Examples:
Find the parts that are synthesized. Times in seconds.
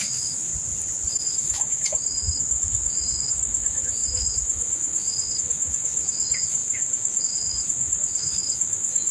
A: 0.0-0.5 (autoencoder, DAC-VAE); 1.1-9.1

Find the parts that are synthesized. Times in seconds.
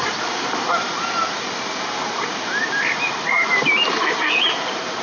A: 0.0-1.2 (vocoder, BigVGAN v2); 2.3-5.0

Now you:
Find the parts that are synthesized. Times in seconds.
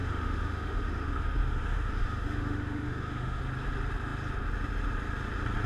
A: 0.0-3.4 (autoencoder, DAC-VAE)